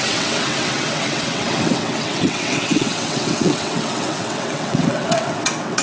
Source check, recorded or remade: remade